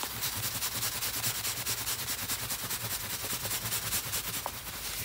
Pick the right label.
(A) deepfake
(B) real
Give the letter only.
B